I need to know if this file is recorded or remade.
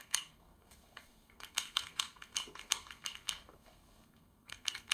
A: remade